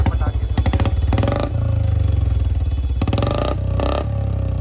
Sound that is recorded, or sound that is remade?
recorded